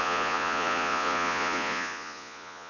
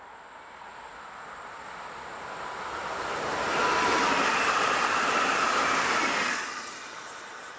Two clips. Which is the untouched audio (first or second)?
second